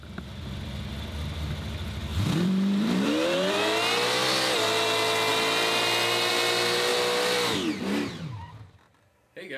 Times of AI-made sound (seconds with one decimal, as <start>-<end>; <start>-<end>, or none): 2.1-3.6

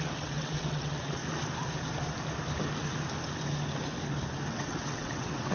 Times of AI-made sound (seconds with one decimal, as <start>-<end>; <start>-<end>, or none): 0.0-1.2; 4.5-5.5

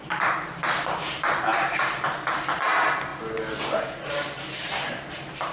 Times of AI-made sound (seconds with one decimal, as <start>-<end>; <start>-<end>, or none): 0.0-3.1; 3.8-5.5

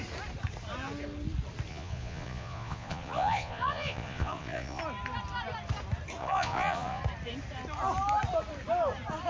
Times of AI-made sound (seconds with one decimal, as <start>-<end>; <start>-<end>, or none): 1.7-4.8; 6.2-7.0